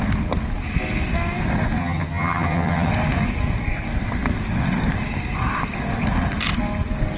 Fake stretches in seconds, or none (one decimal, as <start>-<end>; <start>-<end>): 1.8-2.9